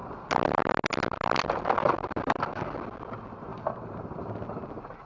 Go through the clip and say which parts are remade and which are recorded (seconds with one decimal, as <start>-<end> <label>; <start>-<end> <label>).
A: 0.0-3.5 recorded; 3.5-4.1 remade; 4.1-5.1 recorded